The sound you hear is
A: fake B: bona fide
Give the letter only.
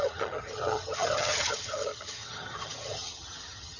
A